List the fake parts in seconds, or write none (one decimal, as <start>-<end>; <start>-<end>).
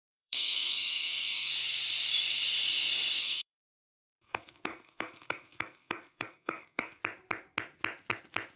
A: 0.0-1.5; 3.2-7.0